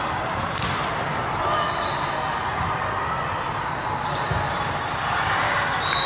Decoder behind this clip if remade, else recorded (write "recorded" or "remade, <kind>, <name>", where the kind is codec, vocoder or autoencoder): recorded